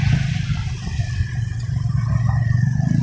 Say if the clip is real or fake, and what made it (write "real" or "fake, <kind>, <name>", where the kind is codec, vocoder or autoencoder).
real